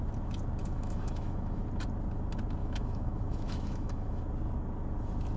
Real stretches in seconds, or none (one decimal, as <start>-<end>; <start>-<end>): 0.0-0.6; 1.6-2.6; 4.2-5.4